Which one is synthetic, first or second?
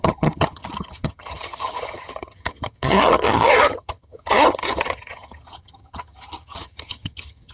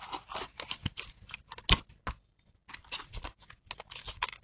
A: first